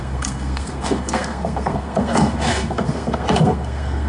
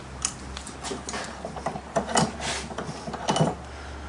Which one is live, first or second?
second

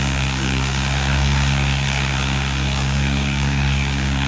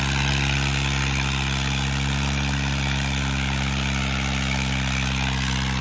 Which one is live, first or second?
second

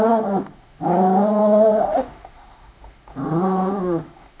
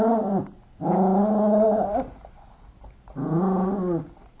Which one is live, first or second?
second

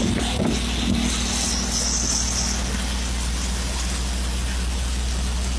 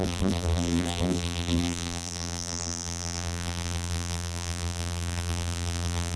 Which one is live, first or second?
first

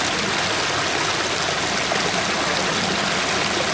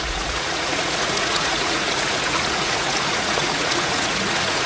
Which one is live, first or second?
first